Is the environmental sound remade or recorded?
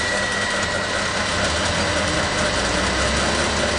recorded